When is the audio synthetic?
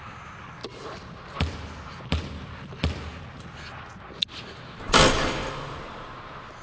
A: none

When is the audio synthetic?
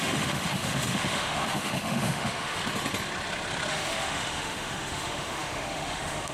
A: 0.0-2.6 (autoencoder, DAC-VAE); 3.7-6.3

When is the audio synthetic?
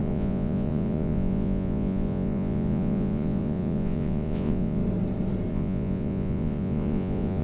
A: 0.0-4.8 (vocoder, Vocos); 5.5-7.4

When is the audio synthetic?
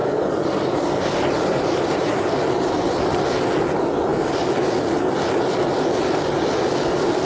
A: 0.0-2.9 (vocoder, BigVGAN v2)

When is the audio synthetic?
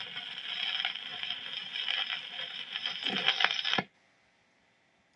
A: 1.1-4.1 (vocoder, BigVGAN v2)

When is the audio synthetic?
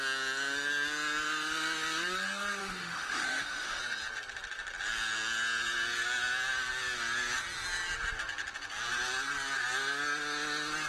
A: 2.6-3.8 (autoencoder, DAC-VAE)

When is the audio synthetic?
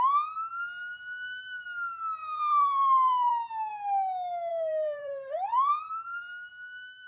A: 2.2-3.5 (vocoder, BigVGAN v2); 4.5-6.3